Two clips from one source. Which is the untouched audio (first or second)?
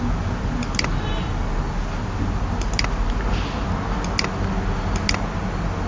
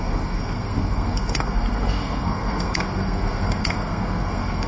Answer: first